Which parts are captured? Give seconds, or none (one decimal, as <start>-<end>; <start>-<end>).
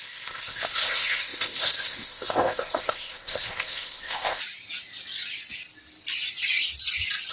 4.4-7.3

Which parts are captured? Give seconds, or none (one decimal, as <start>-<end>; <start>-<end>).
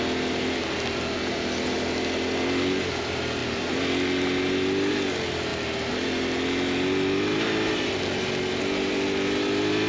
0.0-9.9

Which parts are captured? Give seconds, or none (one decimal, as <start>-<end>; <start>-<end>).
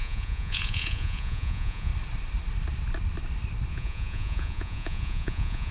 1.9-3.7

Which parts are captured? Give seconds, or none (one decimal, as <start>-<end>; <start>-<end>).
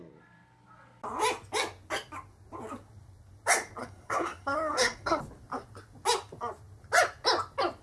0.0-3.8; 5.2-7.8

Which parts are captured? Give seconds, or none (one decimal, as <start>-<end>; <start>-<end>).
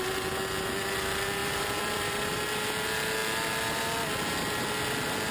0.0-1.4; 2.3-5.3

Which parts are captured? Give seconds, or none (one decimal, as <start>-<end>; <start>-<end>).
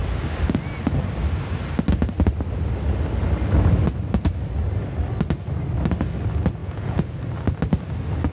0.0-6.6; 7.2-8.3